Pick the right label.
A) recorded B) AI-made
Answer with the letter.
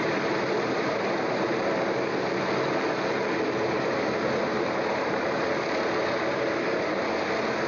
A